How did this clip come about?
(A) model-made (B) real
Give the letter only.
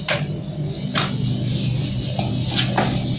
B